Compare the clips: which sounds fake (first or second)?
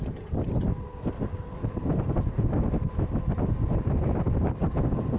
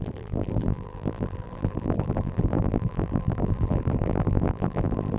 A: second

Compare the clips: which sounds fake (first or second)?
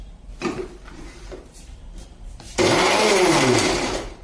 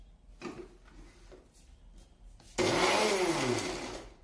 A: first